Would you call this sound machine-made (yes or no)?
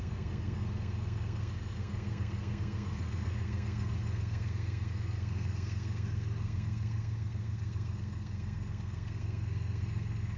yes